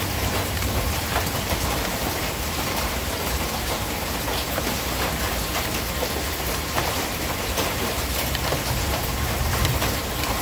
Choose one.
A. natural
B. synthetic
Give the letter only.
B